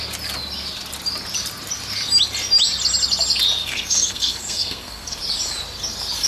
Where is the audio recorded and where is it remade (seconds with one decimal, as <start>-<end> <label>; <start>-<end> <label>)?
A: 0.0-3.6 recorded; 3.6-5.2 remade; 5.2-6.3 recorded